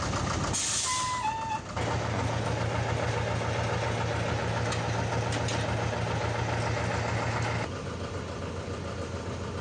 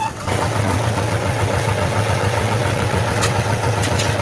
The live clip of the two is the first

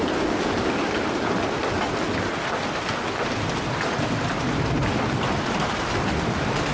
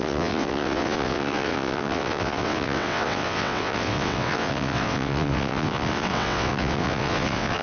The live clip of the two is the first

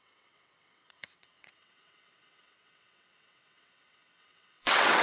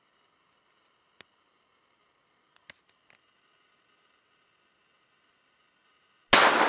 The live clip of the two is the second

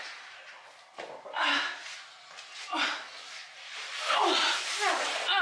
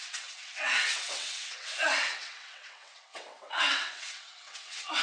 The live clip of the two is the first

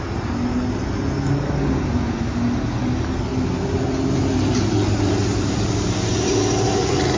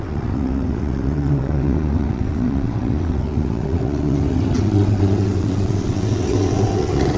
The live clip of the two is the first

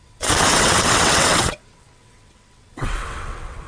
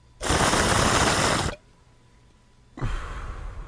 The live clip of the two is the second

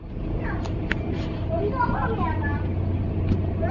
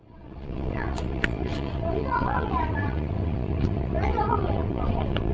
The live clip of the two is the first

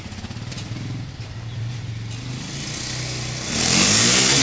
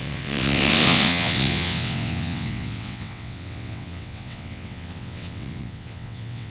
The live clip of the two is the first